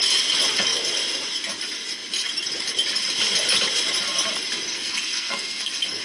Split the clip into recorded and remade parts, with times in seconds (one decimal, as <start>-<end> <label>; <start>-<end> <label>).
0.0-4.7 recorded; 4.7-6.0 remade